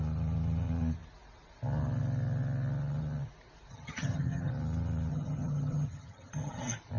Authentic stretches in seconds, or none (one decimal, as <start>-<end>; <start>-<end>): 0.0-3.7; 4.5-5.1; 6.6-7.0